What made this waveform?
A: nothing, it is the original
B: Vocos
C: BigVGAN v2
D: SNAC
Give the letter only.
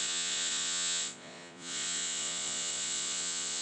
B